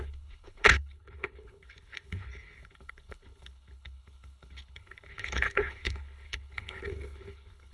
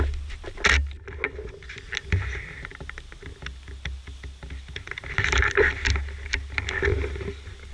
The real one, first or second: second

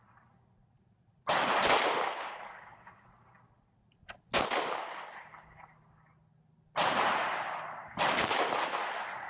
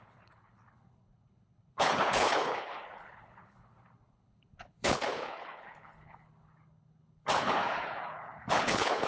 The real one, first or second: first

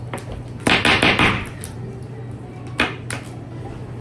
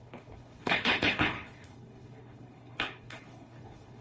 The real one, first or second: first